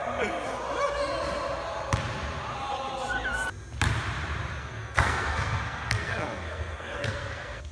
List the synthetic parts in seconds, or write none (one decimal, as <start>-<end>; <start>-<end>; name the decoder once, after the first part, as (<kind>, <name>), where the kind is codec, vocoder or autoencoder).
4.6-7.7 (codec, SNAC)